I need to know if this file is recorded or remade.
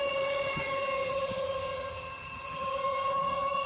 remade